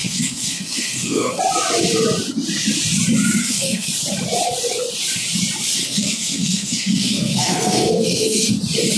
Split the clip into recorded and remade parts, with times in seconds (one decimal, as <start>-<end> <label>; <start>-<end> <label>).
0.0-1.4 remade; 1.4-3.4 recorded; 3.4-3.9 remade; 3.9-5.8 recorded; 5.8-8.5 remade; 8.5-9.0 recorded